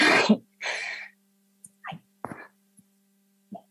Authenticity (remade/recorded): recorded